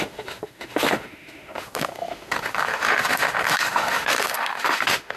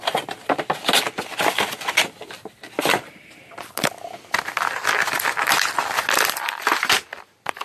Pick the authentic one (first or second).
second